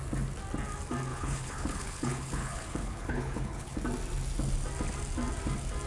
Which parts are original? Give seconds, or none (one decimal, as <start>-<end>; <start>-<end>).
0.0-1.1; 3.8-5.9